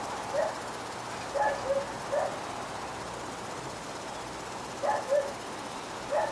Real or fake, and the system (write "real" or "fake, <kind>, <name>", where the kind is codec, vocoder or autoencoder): real